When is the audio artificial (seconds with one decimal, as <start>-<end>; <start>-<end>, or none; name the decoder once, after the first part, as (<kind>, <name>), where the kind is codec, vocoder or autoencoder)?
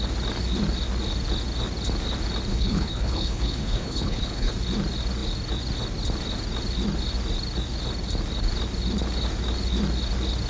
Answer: 2.5-4.5 (codec, HILCodec)